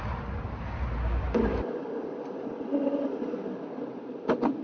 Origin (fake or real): real